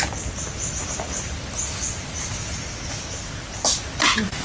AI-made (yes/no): no